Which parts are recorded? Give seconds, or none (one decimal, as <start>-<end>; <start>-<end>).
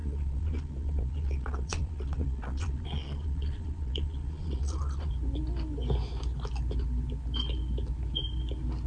5.1-8.9